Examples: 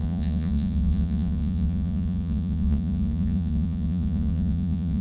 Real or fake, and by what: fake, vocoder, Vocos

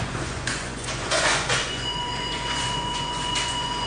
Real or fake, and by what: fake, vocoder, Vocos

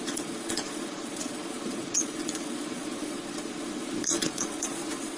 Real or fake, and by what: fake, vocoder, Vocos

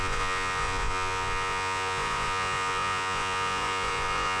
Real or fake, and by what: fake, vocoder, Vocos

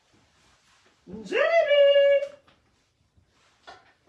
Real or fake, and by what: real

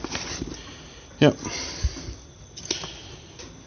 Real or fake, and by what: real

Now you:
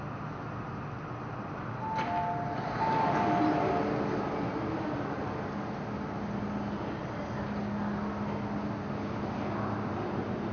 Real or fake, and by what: real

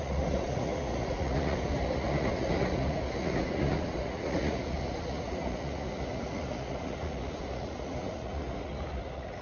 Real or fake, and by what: fake, vocoder, Vocos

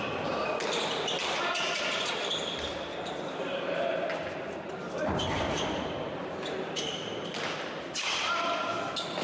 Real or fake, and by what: real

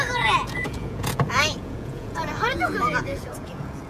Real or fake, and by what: fake, vocoder, Vocos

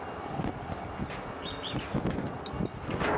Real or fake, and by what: real